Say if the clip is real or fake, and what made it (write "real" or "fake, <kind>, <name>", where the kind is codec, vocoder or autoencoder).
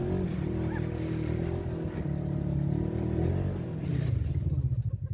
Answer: real